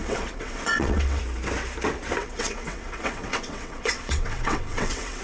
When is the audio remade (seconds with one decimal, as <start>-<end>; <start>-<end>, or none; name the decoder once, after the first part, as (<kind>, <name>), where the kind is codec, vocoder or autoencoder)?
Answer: 0.0-1.2 (vocoder, WaveNeXt); 2.2-5.2